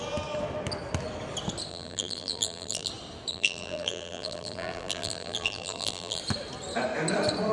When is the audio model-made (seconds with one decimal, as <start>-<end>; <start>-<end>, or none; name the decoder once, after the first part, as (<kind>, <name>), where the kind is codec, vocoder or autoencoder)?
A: 1.7-2.9 (vocoder, BigVGAN v2); 3.3-6.2